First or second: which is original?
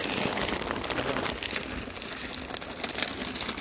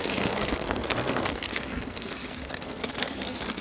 first